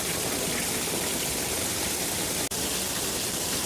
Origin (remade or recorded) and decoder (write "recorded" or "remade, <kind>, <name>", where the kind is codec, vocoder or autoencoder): recorded